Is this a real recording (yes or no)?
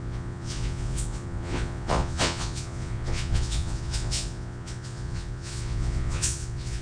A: no